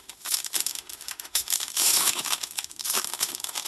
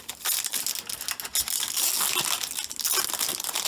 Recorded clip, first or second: second